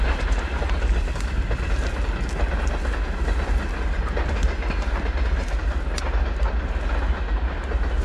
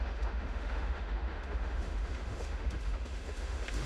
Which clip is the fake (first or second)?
second